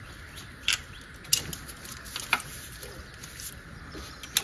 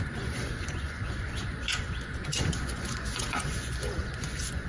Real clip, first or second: first